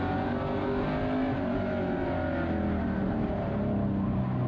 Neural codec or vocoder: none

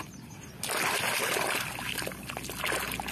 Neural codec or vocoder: none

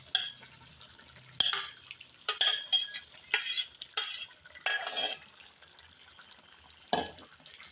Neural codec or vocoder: none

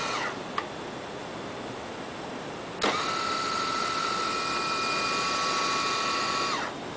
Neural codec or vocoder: none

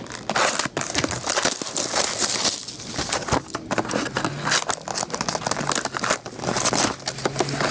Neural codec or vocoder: none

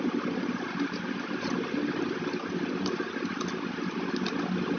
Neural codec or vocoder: none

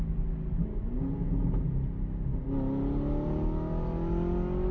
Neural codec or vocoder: none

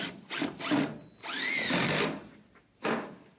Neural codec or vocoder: none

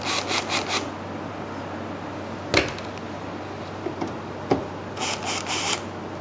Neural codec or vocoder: none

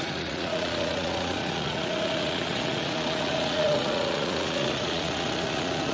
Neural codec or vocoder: vocoder, Vocos